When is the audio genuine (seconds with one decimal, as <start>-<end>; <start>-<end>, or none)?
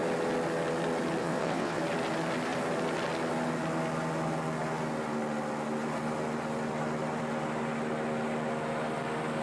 0.0-1.2; 1.8-9.4